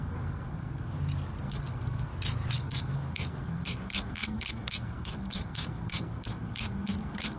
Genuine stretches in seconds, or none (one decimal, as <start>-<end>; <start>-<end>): 0.9-1.4; 2.1-2.6